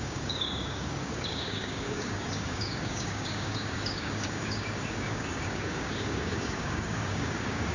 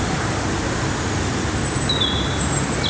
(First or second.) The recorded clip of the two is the second